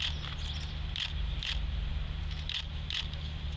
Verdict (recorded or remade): recorded